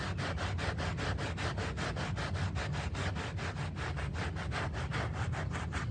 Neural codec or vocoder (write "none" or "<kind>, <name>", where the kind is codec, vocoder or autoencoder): none